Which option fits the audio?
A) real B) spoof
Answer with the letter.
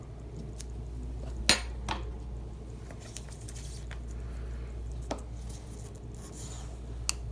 A